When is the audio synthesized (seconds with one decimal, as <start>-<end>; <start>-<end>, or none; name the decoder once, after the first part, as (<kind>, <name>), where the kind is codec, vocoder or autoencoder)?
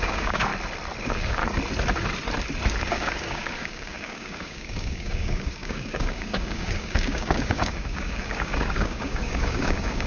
0.0-0.5 (codec, DAC); 1.0-1.4; 2.8-10.1